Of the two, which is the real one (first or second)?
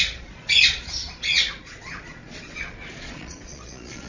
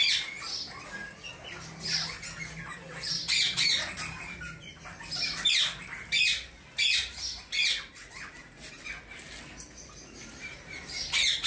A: second